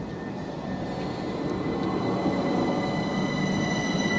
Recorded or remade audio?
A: recorded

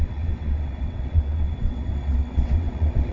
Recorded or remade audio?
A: remade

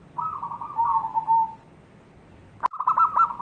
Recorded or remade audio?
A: recorded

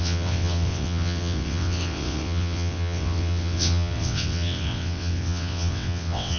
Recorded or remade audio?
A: remade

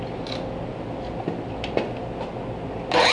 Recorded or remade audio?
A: recorded